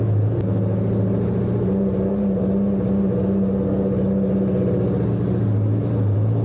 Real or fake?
real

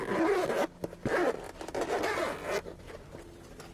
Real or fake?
real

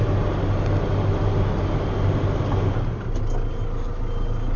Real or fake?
real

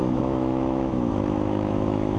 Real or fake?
fake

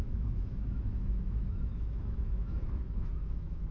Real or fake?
fake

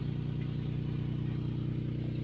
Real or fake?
real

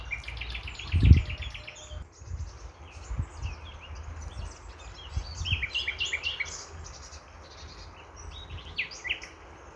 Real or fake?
real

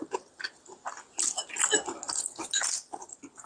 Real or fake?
real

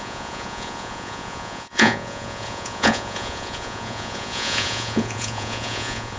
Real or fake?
fake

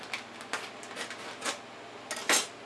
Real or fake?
real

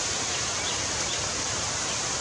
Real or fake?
real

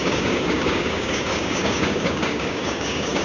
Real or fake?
fake